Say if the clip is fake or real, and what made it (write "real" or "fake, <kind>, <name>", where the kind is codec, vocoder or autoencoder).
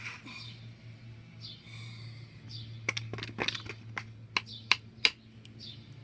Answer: real